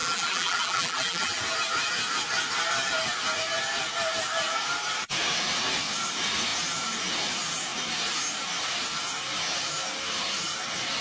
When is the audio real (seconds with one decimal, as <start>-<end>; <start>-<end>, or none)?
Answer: 1.4-11.0